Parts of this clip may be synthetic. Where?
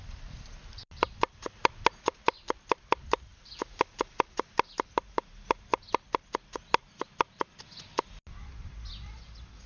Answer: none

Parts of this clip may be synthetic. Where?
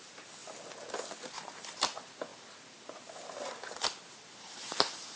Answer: 0.0-0.4 (vocoder, BigVGAN v2); 1.3-5.2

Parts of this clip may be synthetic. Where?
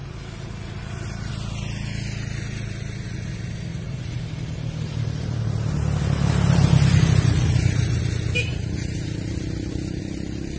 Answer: 0.0-1.3 (vocoder, BigVGAN v2); 3.7-8.0; 8.5-10.0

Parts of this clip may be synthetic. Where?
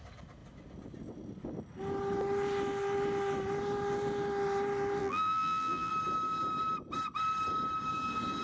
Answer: 5.0-5.9 (vocoder, BigVGAN v2)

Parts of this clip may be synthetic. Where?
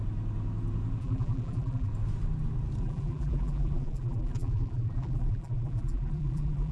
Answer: 1.0-1.9 (vocoder, BigVGAN v2); 2.8-6.7